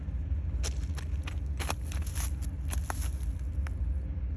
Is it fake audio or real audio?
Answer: real